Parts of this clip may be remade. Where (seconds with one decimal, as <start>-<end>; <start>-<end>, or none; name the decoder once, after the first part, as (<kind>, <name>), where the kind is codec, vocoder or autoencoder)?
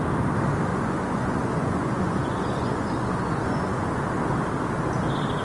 0.7-3.9 (vocoder, Vocos)